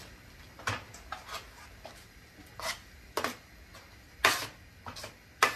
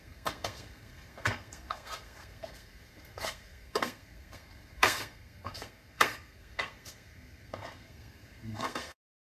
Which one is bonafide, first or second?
first